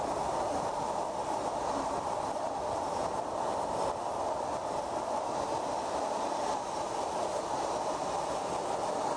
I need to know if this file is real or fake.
real